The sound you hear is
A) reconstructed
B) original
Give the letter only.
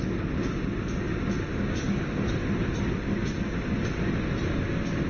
B